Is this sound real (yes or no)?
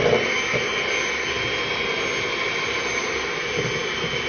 yes